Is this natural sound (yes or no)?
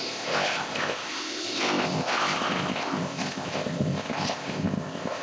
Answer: no